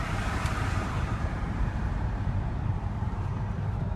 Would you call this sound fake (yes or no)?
yes